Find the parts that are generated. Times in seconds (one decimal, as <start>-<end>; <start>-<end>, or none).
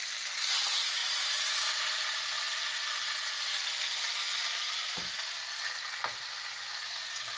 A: none